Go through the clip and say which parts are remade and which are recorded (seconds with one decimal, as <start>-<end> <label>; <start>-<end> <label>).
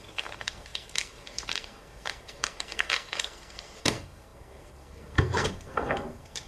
0.0-6.5 remade